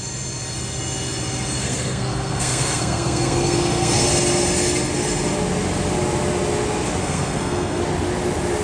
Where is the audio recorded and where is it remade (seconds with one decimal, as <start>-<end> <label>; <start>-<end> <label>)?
0.0-1.6 recorded; 1.6-4.0 remade; 4.0-7.0 recorded; 7.0-7.8 remade; 7.8-8.6 recorded